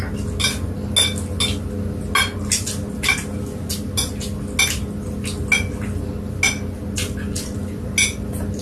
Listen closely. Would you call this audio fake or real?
real